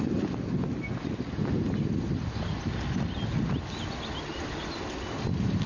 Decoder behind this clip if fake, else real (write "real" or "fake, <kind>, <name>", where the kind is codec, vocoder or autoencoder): real